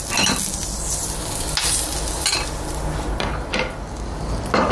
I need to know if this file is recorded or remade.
recorded